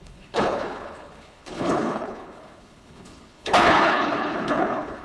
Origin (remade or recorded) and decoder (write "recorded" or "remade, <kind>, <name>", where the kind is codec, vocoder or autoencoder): remade, codec, HILCodec